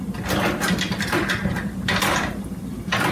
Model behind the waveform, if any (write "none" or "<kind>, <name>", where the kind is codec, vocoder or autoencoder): none